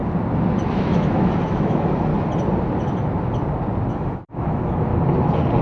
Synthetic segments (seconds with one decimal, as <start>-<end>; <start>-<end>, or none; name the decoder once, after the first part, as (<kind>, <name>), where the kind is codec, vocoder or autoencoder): 0.7-2.1 (autoencoder, DAC-VAE); 3.9-4.9